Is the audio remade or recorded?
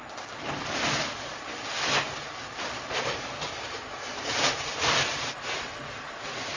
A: recorded